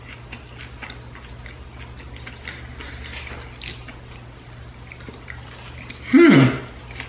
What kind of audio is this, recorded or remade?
recorded